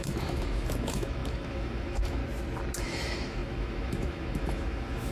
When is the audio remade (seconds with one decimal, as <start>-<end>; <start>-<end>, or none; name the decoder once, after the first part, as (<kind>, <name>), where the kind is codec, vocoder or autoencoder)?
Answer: 0.0-2.2 (autoencoder, DAC-VAE); 2.8-5.1